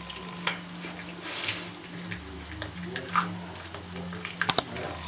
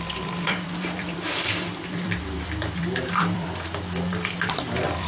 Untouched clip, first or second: first